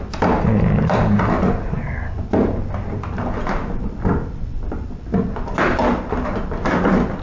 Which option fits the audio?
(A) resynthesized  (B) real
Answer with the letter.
B